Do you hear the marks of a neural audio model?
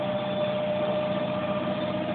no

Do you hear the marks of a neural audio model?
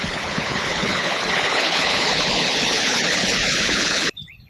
yes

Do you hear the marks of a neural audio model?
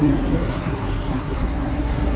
yes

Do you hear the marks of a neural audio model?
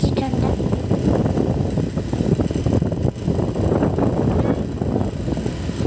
no